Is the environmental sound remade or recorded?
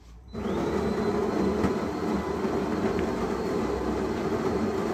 recorded